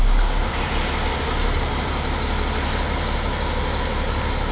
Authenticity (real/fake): real